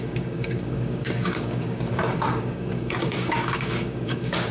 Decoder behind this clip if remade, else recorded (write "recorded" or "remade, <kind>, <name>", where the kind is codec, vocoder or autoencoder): remade, codec, DAC